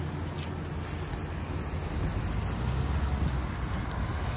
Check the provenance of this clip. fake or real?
real